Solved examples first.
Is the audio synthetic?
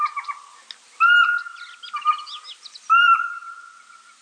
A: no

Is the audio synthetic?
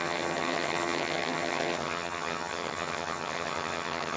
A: yes